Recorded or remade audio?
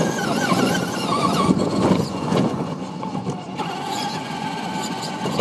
remade